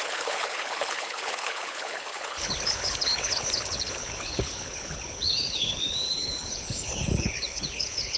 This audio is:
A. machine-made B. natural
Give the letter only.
A